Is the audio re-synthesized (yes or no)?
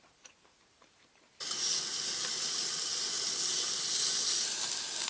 no